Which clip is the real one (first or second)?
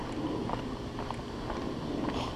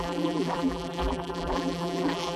first